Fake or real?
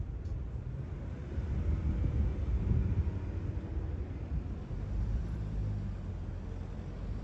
real